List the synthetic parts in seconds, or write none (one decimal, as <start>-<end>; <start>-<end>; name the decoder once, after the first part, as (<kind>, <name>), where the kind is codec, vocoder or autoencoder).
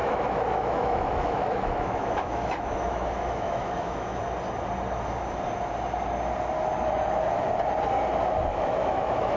0.0-4.2 (autoencoder, DAC-VAE); 8.5-9.4